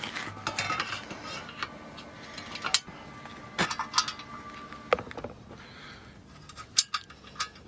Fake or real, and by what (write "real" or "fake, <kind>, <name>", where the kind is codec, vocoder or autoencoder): real